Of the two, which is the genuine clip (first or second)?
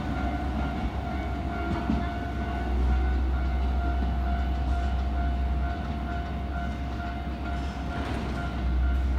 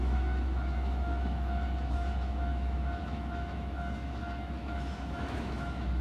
first